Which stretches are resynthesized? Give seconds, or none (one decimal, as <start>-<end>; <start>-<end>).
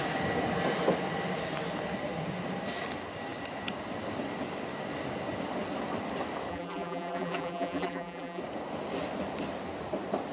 6.5-8.4